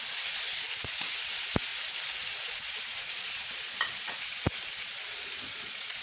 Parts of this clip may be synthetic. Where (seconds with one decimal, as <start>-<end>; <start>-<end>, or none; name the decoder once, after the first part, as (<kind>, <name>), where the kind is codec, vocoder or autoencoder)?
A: 0.0-1.7 (vocoder, Vocos); 2.3-6.0